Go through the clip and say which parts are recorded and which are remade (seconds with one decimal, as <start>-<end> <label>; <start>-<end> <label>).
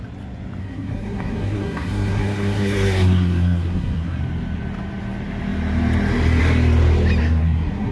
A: 0.0-0.6 recorded; 0.6-4.2 remade; 4.2-7.2 recorded; 7.2-7.9 remade